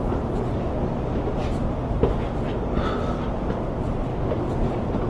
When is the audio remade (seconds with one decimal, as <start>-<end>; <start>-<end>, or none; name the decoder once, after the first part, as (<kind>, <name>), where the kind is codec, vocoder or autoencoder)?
none